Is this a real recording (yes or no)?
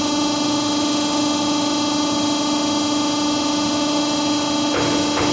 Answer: yes